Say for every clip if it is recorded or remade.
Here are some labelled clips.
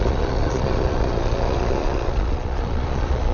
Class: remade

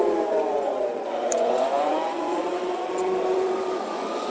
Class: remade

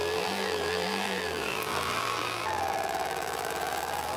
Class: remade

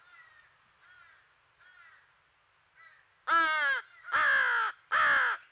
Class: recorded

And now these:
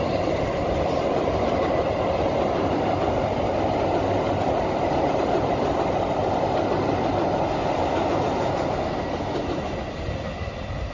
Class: recorded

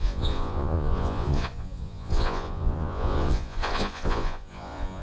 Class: remade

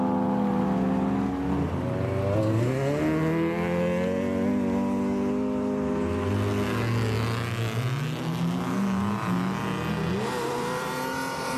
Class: recorded